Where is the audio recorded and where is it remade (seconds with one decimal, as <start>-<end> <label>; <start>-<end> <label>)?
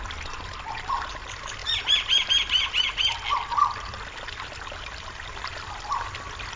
0.0-6.6 recorded